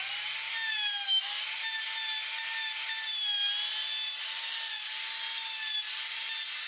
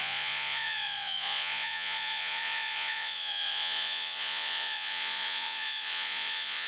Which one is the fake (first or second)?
second